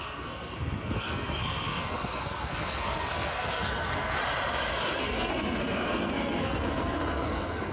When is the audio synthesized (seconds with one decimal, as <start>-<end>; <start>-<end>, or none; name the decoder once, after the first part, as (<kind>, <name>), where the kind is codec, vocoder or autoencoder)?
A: 0.0-4.2 (codec, SNAC); 4.9-7.7